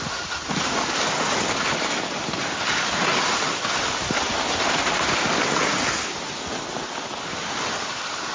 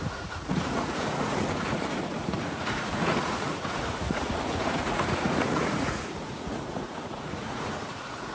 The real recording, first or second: first